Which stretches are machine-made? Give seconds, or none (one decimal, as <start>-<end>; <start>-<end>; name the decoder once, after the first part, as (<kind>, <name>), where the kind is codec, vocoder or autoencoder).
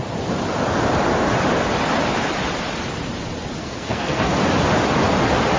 3.6-4.3 (codec, SNAC)